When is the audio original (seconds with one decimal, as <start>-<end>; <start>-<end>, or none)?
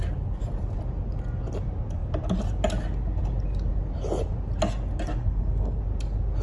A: 0.0-5.2; 5.8-6.4